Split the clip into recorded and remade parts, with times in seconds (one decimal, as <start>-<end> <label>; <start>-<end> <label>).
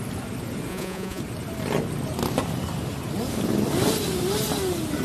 0.0-0.7 recorded; 0.7-1.2 remade; 1.2-5.0 recorded